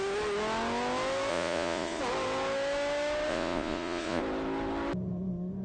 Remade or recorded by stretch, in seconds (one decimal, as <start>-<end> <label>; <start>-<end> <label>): 0.0-1.3 recorded; 1.3-2.0 remade; 2.0-3.3 recorded; 3.3-4.2 remade; 4.2-5.6 recorded